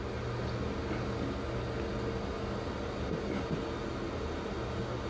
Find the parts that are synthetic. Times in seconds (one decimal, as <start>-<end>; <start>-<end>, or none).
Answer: none